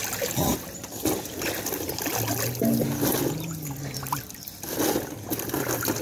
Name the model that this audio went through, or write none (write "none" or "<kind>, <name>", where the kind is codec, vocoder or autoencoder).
none